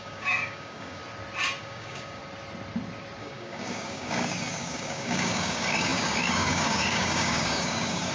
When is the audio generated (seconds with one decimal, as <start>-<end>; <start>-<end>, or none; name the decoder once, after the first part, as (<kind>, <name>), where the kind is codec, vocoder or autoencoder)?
0.0-1.0 (codec, DAC); 1.6-2.2; 3.2-8.1